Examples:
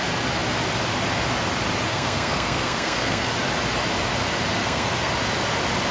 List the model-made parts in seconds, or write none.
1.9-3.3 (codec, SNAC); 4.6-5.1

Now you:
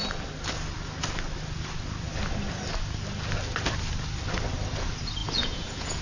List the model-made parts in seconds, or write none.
5.2-6.0 (vocoder, Vocos)

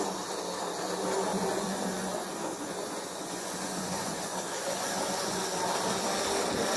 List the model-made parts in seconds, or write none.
1.3-5.4 (vocoder, Vocos)

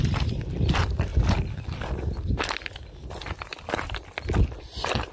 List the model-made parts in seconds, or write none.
none

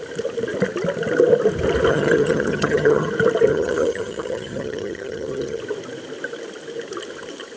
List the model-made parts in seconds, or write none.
1.9-3.1 (vocoder, HiFi-GAN); 3.5-5.6

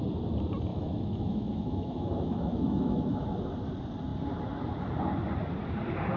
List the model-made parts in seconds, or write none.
0.7-3.2 (autoencoder, DAC-VAE)